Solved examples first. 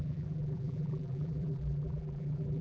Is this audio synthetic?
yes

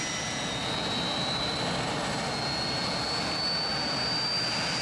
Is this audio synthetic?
no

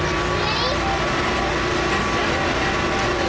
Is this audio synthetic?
no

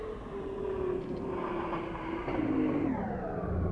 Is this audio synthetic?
yes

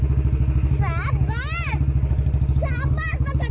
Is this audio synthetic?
no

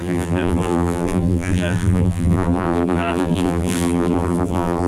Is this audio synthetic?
yes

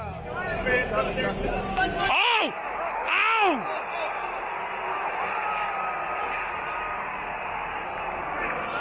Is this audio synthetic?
no